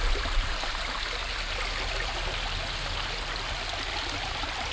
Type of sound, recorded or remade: recorded